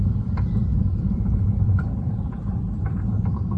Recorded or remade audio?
remade